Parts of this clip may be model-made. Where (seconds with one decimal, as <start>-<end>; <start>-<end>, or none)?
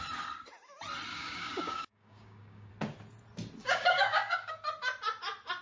1.1-2.7; 3.6-4.5